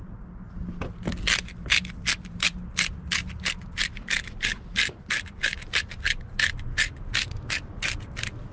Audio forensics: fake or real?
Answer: real